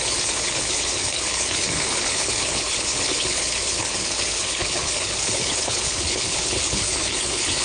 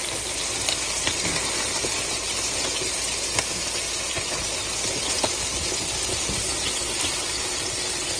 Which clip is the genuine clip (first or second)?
second